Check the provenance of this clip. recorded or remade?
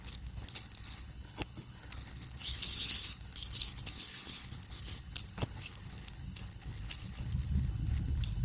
remade